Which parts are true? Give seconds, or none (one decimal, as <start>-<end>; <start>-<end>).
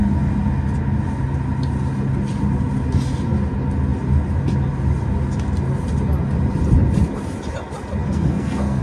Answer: 0.0-8.0